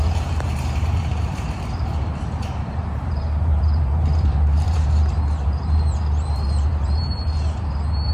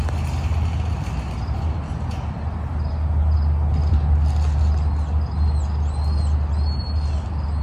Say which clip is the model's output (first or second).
first